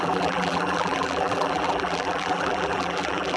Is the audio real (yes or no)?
no